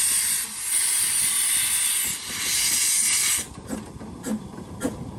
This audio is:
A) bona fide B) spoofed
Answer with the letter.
A